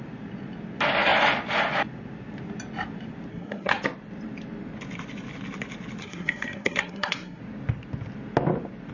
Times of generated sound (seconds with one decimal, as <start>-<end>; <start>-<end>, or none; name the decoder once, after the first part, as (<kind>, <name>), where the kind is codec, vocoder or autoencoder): 3.3-3.8 (codec, SNAC); 6.0-7.4